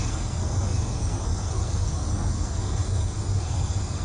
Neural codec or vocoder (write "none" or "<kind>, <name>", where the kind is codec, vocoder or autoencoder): codec, SNAC